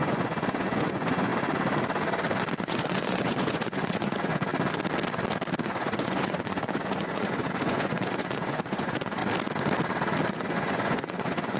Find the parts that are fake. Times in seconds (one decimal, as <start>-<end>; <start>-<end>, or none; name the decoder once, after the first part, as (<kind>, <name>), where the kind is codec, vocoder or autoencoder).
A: 0.0-1.3 (vocoder, Vocos); 2.6-4.5; 5.6-9.2; 10.3-11.6